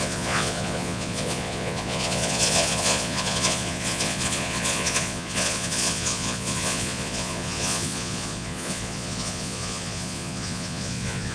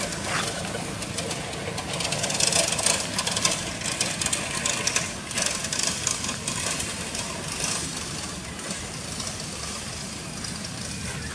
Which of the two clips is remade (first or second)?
first